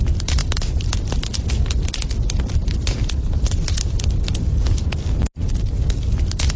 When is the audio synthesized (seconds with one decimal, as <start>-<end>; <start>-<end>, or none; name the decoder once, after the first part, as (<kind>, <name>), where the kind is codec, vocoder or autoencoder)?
none